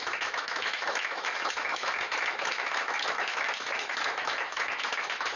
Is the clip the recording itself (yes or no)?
no